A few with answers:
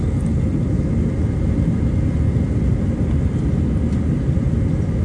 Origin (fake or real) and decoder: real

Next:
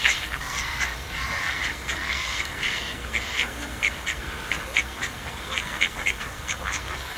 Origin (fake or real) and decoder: fake, codec, SNAC